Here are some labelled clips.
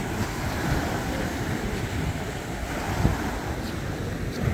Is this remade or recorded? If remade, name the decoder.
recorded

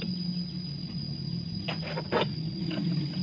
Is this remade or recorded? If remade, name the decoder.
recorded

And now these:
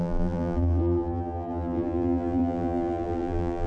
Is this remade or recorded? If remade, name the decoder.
remade, vocoder, BigVGAN v2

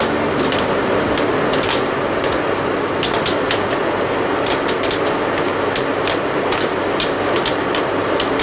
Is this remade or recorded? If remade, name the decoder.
recorded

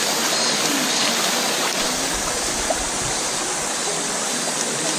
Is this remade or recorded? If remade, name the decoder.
recorded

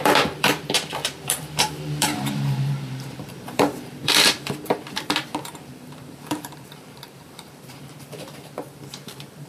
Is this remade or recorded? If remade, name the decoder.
remade, vocoder, BigVGAN v2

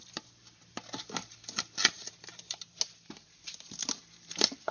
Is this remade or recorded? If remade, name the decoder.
recorded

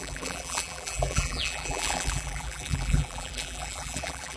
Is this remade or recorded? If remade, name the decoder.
remade, vocoder, BigVGAN v2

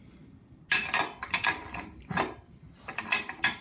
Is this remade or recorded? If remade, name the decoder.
recorded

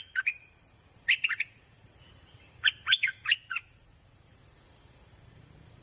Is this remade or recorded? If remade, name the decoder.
remade, vocoder, Vocos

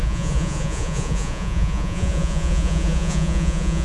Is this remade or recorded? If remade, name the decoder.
remade, vocoder, Vocos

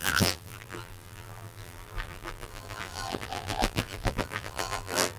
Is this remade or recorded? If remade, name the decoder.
remade, vocoder, BigVGAN v2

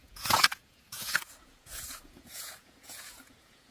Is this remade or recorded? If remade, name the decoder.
remade, vocoder, Vocos